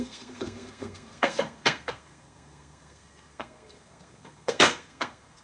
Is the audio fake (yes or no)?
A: yes